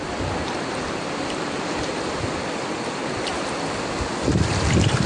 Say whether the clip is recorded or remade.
recorded